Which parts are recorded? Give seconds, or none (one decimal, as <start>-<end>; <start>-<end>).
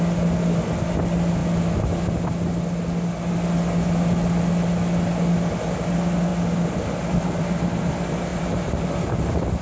0.0-9.6